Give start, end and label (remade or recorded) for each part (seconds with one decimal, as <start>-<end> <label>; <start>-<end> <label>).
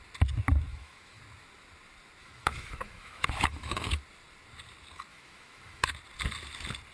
0.0-0.7 recorded; 0.7-1.2 remade; 1.2-2.2 recorded; 2.2-4.0 remade; 4.0-5.1 recorded; 5.1-5.9 remade; 5.9-6.9 recorded